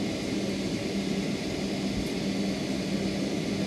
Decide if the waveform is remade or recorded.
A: recorded